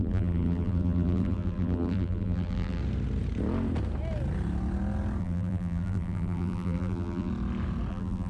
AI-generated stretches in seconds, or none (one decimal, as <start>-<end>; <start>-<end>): 0.0-2.8; 5.2-7.3; 7.9-8.3